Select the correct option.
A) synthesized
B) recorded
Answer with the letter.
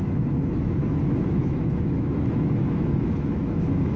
A